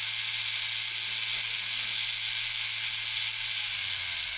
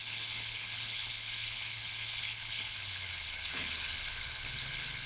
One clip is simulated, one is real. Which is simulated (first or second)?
second